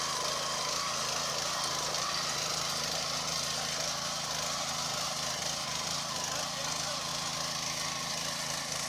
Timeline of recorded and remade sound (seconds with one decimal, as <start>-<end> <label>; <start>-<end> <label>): 0.0-8.9 recorded